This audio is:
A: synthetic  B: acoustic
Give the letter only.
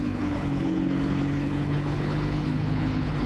A